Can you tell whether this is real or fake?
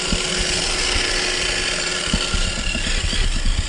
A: real